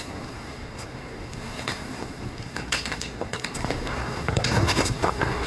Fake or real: fake